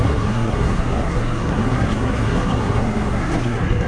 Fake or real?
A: fake